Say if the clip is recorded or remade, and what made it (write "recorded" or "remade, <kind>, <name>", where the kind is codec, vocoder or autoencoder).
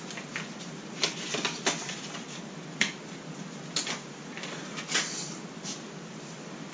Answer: recorded